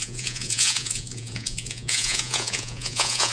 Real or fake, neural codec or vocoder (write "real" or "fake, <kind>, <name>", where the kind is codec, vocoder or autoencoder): fake, vocoder, Vocos